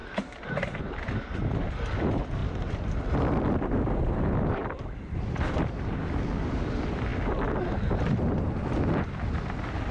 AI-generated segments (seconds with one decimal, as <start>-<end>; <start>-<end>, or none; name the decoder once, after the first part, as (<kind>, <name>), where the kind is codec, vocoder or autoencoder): 2.4-6.0 (vocoder, BigVGAN v2)